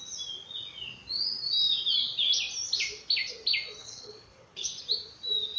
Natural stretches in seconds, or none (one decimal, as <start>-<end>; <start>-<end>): 0.0-3.8; 4.7-5.6